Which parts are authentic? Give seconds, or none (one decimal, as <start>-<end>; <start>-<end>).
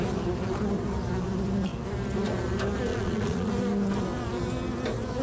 0.0-2.9; 3.5-5.2